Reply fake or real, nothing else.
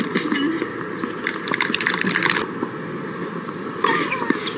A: real